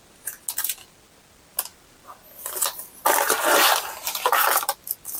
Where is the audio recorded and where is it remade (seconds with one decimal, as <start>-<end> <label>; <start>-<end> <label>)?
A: 0.0-1.7 recorded; 1.7-4.8 remade; 4.8-5.2 recorded